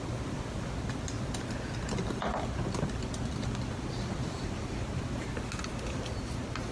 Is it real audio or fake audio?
real